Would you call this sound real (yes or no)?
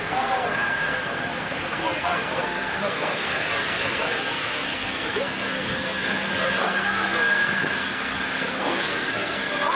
no